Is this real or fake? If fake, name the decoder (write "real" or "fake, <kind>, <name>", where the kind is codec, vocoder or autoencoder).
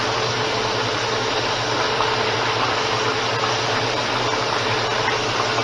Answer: real